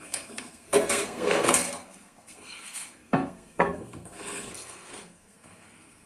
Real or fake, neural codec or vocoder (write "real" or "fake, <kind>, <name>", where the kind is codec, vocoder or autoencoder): fake, codec, SNAC